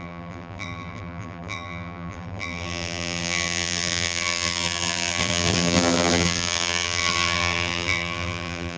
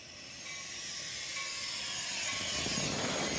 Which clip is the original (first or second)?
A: second